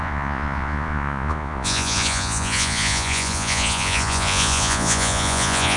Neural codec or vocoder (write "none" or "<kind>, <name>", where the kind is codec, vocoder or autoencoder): vocoder, Vocos